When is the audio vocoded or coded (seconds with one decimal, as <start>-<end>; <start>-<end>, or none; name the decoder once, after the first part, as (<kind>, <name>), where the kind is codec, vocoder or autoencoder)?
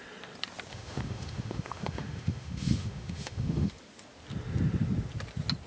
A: 0.7-3.7 (autoencoder, DAC-VAE)